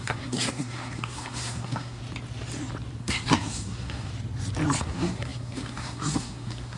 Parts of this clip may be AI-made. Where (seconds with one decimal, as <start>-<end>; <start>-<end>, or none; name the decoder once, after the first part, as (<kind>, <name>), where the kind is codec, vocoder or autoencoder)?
0.0-2.0 (codec, SNAC); 3.0-4.1; 4.8-6.8